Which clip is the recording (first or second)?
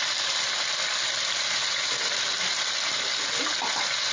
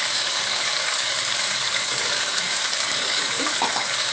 first